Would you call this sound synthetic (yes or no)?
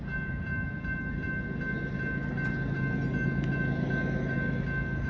no